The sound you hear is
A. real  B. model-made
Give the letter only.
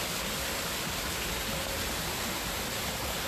A